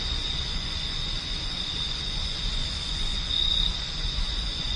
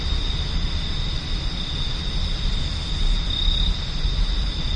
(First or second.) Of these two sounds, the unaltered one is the second